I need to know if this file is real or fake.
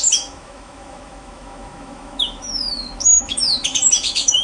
fake